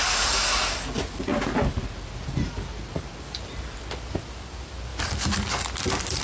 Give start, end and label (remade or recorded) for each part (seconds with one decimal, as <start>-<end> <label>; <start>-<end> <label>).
0.0-6.2 recorded